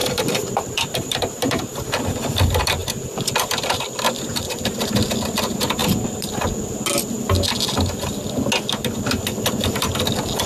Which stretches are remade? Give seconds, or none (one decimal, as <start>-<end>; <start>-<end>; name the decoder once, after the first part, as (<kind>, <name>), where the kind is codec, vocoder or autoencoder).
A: 0.0-1.9 (vocoder, BigVGAN v2)